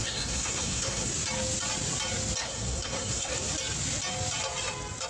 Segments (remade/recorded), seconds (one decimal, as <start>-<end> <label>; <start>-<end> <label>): 0.0-1.1 remade; 1.1-2.4 recorded; 2.4-3.3 remade; 3.3-5.1 recorded